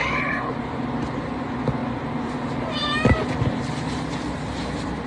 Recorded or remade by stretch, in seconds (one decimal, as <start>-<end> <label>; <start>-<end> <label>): 0.0-0.5 remade; 0.5-5.1 recorded

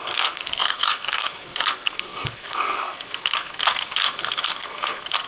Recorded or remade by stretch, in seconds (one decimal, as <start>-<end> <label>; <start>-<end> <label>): 0.0-5.3 remade